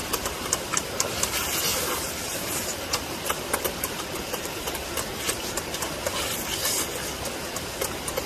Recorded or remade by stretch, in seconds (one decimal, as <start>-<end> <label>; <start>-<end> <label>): 0.0-1.7 recorded; 1.7-4.9 remade; 4.9-8.3 recorded